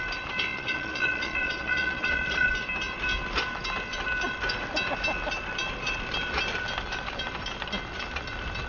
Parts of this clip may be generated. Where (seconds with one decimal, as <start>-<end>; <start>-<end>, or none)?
0.5-2.5